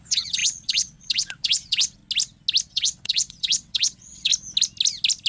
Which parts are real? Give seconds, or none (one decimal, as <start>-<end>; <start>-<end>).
2.0-2.7; 4.3-5.3